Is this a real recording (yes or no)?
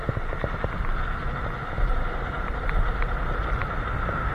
yes